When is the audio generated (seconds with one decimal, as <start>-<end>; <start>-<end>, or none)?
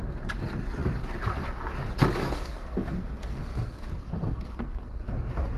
2.2-5.0